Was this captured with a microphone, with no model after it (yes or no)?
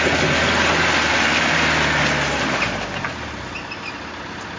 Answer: yes